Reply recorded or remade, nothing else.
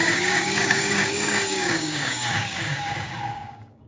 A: remade